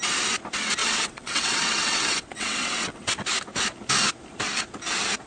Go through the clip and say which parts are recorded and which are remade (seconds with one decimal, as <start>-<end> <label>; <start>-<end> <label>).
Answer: 0.0-0.8 recorded; 0.8-3.1 remade; 3.1-5.3 recorded